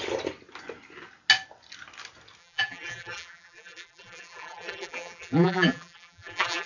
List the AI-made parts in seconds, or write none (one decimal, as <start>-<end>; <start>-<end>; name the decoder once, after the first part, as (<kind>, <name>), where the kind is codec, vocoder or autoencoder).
2.4-6.7 (vocoder, BigVGAN v2)